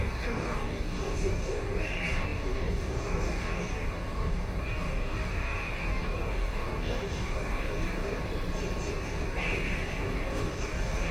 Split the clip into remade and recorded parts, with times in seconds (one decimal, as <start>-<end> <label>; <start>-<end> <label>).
0.0-8.2 remade; 8.2-8.9 recorded; 8.9-11.1 remade